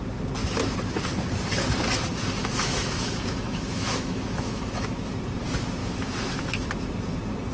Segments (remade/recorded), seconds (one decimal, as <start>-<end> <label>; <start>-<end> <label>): 0.0-2.4 recorded; 2.4-5.1 remade; 5.1-5.8 recorded; 5.8-6.5 remade; 6.5-7.5 recorded